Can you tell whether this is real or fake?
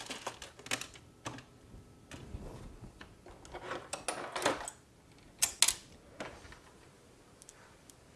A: real